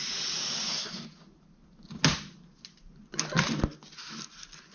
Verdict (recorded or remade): recorded